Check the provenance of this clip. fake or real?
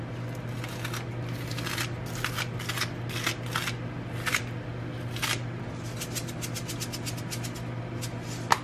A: real